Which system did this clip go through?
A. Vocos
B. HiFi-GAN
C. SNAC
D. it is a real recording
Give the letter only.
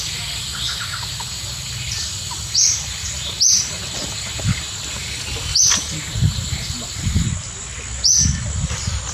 D